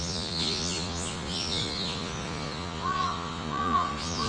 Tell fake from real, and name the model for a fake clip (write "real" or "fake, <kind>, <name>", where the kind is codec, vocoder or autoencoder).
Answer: fake, vocoder, Vocos